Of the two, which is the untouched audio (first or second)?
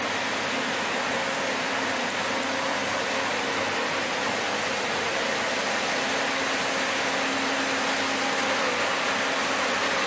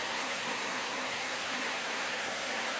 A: first